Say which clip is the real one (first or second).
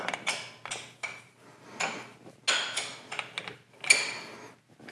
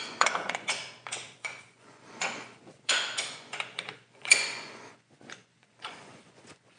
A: first